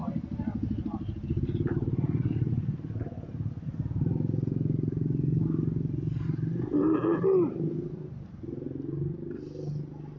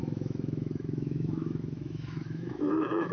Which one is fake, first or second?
second